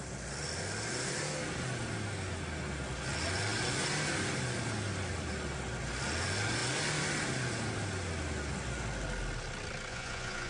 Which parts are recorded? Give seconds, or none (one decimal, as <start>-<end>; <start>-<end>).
0.0-9.9